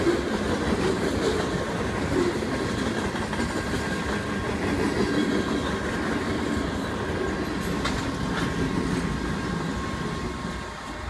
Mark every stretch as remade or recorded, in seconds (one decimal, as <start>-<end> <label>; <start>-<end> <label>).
0.0-11.1 recorded